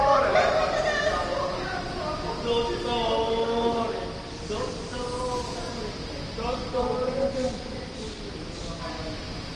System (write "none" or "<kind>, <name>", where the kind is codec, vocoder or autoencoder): none